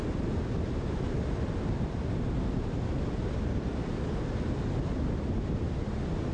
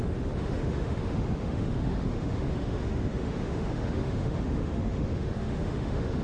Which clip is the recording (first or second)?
first